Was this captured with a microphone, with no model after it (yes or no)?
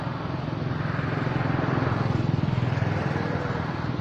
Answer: yes